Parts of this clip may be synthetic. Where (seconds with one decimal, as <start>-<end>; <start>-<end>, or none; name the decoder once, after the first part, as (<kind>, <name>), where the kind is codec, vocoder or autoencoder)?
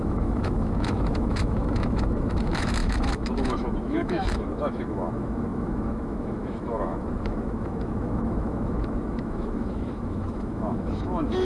0.0-11.4 (autoencoder, DAC-VAE)